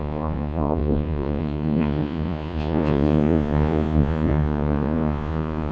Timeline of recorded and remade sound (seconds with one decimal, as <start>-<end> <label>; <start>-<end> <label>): 0.0-5.7 remade